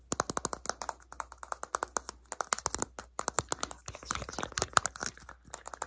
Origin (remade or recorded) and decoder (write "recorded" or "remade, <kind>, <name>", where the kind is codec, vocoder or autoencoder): recorded